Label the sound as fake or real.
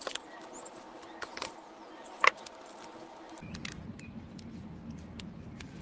real